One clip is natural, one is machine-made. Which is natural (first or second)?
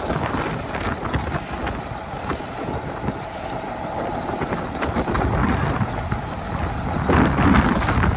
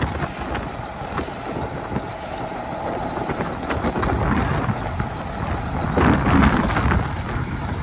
second